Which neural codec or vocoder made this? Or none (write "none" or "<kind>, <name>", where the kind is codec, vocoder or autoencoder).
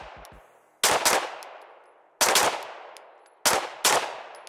none